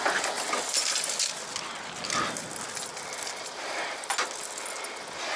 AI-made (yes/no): no